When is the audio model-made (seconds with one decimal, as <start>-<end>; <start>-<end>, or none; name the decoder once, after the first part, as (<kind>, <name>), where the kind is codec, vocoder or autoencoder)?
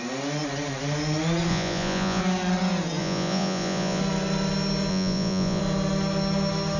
1.5-2.2 (vocoder, Vocos); 3.0-4.0; 4.9-5.6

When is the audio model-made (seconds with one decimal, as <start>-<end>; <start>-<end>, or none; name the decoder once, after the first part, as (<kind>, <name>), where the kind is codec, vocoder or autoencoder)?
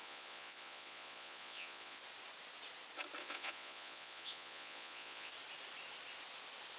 0.0-2.0 (vocoder, Vocos); 3.2-5.3